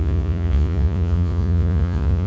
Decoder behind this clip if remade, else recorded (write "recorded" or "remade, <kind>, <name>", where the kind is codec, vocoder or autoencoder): remade, vocoder, Vocos